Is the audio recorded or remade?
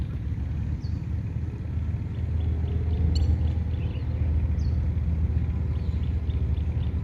recorded